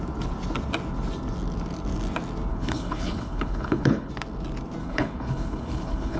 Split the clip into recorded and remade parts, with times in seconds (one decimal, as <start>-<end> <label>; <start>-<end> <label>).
0.0-2.5 recorded; 2.5-4.1 remade; 4.1-4.8 recorded; 4.8-6.2 remade